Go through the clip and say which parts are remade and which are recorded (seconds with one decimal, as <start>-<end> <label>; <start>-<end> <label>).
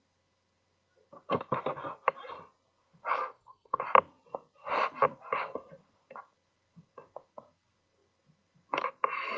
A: 0.0-3.1 recorded; 3.1-3.8 remade; 3.8-9.4 recorded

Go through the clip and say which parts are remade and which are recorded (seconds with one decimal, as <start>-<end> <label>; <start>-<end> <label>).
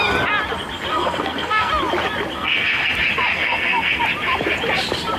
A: 0.0-0.9 recorded; 0.9-1.7 remade; 1.7-2.3 recorded; 2.3-2.9 remade; 2.9-3.3 recorded; 3.3-4.0 remade; 4.0-5.2 recorded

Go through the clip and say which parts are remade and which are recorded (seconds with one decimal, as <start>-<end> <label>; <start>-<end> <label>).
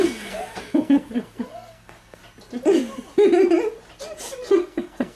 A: 0.0-2.2 remade; 2.2-4.5 recorded; 4.5-5.2 remade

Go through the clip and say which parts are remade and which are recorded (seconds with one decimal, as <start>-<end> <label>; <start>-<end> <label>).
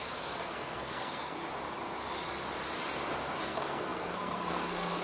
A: 0.0-1.4 remade; 1.4-3.4 recorded; 3.4-5.0 remade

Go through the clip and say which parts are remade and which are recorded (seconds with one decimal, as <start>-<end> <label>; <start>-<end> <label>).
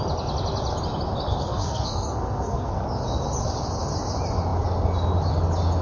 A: 0.0-1.4 recorded; 1.4-2.8 remade; 2.8-5.8 recorded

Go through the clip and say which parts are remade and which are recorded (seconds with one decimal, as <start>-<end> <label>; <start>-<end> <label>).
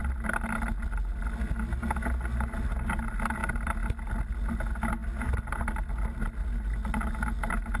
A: 0.0-7.8 recorded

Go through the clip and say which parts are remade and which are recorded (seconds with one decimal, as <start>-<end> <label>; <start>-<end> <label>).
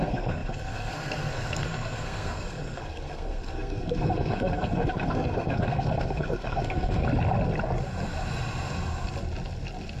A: 0.0-7.0 remade; 7.0-10.0 recorded